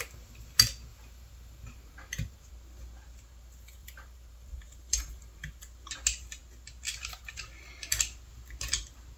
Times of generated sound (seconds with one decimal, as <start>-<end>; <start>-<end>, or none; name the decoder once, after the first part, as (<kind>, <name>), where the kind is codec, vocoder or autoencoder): 0.9-2.5 (vocoder, BigVGAN v2); 3.8-5.6